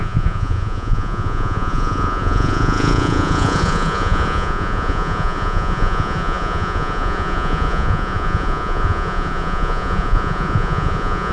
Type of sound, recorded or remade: remade